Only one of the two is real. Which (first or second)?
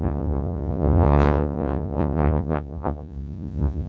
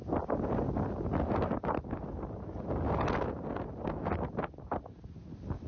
second